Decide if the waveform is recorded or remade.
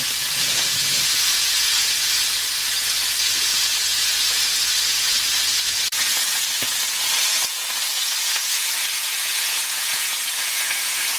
remade